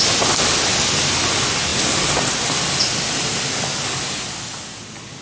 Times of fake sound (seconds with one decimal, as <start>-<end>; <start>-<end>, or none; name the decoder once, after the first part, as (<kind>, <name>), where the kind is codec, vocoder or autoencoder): none